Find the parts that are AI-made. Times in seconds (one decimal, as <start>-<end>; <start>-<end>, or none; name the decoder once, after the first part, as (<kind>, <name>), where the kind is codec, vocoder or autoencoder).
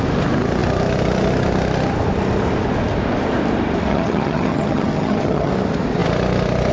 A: 3.9-5.5 (vocoder, HiFi-GAN)